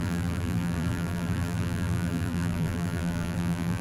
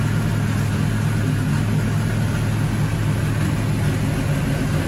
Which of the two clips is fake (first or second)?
first